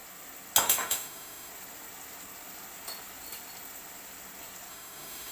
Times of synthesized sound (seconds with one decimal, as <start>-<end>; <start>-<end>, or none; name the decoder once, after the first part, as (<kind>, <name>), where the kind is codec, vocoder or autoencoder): 0.6-1.5 (autoencoder, DAC-VAE); 4.7-5.3